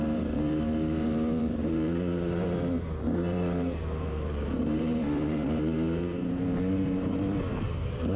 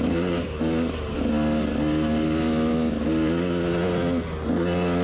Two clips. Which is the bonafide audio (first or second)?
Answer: second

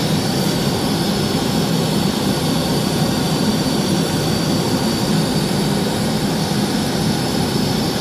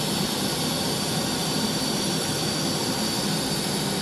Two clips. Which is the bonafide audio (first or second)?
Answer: second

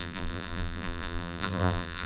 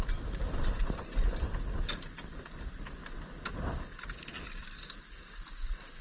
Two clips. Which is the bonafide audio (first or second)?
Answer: second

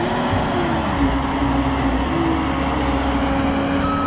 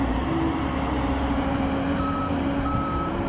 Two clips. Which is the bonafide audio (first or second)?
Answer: first